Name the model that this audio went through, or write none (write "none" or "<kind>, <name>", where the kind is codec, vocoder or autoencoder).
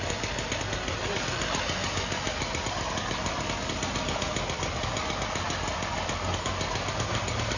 none